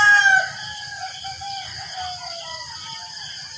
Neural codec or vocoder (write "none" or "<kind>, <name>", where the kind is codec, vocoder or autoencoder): none